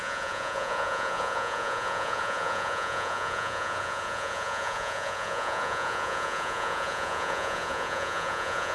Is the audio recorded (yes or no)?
no